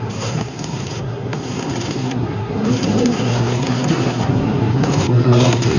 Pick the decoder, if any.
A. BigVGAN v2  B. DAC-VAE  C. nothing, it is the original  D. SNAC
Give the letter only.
D